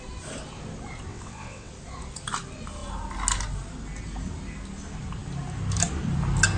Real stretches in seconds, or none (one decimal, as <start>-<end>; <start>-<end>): 0.0-1.1; 1.7-6.6